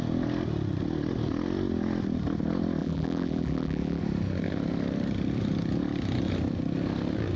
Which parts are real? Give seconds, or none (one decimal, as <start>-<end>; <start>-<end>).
0.0-2.8; 4.0-7.4